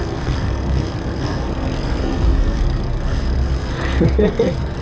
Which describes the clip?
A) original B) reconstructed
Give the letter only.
B